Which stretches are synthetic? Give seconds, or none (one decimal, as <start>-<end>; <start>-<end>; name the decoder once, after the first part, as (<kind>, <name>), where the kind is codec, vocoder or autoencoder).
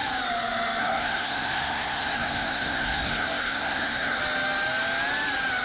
0.8-4.2 (codec, SNAC)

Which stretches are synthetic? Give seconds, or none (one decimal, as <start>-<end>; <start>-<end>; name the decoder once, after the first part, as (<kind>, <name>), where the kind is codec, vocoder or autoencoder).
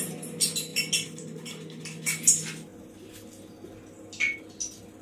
none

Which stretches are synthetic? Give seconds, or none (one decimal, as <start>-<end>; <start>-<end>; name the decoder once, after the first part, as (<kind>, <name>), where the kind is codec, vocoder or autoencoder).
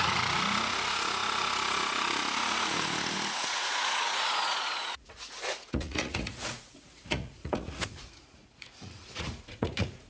0.0-10.1 (vocoder, Vocos)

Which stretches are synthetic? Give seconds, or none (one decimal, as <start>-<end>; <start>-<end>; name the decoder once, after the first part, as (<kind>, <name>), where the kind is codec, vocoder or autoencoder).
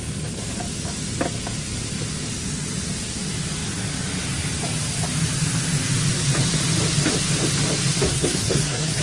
8.1-9.0 (codec, SNAC)